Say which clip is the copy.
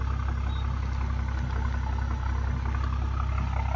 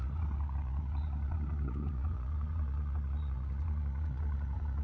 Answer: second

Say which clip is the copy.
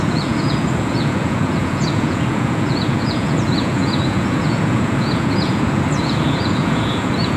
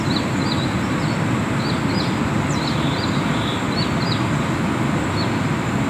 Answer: first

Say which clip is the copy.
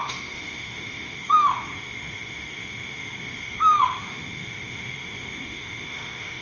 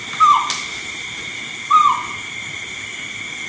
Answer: first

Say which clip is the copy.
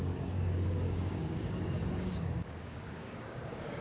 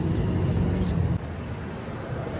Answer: first